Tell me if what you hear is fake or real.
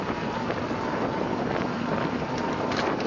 real